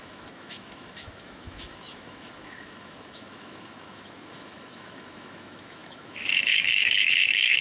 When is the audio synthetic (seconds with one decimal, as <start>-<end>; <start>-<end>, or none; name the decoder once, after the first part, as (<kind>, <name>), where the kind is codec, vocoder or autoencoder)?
0.0-7.6 (autoencoder, DAC-VAE)